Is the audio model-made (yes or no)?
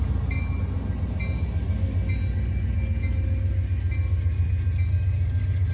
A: no